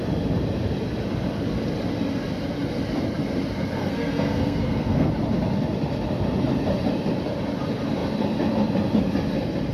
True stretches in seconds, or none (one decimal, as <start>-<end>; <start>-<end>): 0.0-3.8; 5.1-9.7

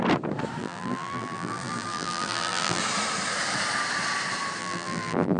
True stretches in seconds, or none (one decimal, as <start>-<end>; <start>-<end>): 0.0-0.6; 2.8-4.6